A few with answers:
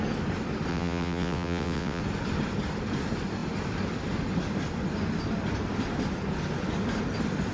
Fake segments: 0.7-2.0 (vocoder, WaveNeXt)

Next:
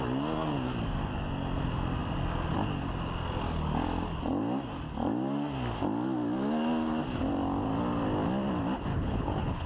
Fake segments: 8.9-9.7 (codec, HILCodec)

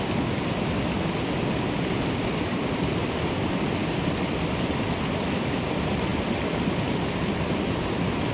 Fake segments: none

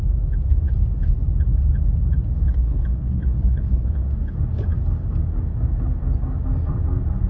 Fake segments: 2.6-4.0 (codec, HILCodec)

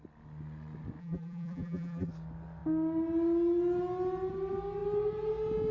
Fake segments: 1.0-2.1 (vocoder, BigVGAN v2)